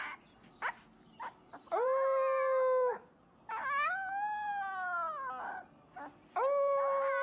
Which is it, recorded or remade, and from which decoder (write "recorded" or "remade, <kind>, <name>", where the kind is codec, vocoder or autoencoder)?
recorded